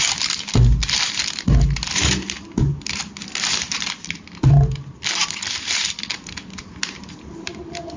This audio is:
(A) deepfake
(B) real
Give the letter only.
B